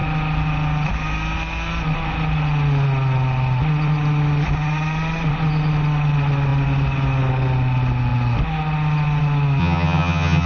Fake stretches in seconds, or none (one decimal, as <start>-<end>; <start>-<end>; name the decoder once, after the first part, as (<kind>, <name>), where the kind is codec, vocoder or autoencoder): 9.6-10.5 (vocoder, HiFi-GAN)